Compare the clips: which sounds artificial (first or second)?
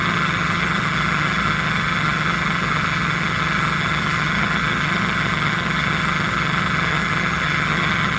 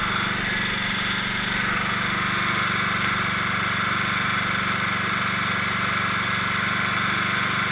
first